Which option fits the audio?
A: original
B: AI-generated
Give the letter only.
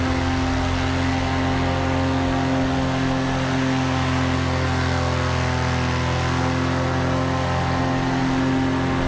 A